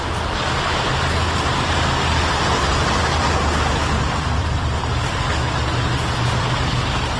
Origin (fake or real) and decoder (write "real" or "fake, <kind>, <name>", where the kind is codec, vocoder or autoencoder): real